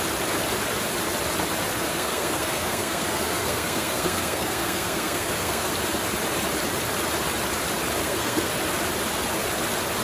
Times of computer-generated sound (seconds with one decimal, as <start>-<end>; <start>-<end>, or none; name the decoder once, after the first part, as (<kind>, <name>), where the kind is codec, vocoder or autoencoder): 1.9-5.7 (codec, SNAC); 8.0-8.5